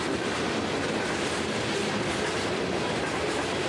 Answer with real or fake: real